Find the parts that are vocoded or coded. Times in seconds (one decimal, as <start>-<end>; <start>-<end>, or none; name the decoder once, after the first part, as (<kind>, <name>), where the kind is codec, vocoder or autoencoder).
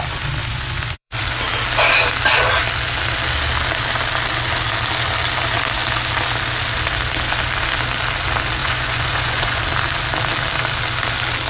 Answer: 0.5-1.2 (vocoder, Vocos); 8.6-9.6